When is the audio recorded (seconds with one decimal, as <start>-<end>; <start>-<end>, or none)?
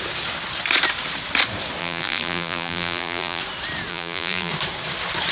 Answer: 0.0-1.8; 3.4-3.9; 4.5-5.3